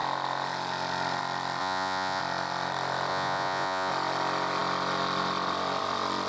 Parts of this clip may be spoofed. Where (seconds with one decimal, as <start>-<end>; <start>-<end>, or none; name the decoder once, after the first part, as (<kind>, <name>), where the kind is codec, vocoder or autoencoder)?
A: 1.6-2.2 (vocoder, Vocos); 3.1-3.9